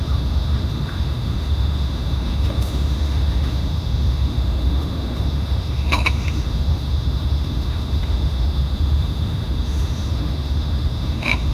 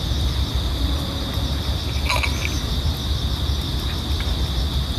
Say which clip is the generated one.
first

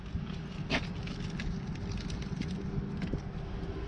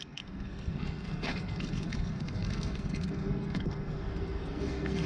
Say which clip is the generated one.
second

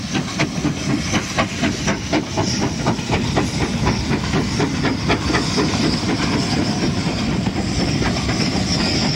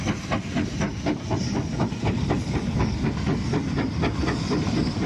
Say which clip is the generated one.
first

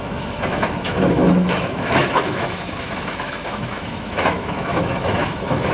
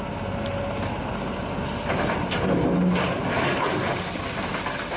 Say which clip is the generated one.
first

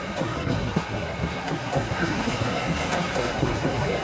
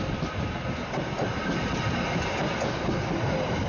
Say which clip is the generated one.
first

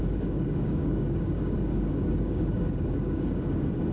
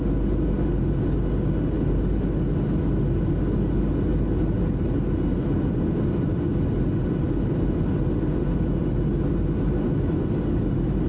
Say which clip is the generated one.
first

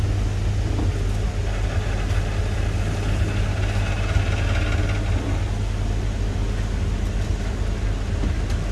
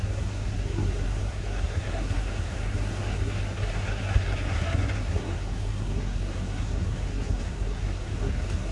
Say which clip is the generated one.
second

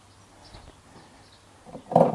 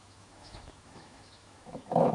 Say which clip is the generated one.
second